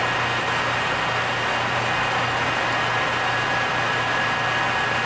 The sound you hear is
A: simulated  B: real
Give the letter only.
B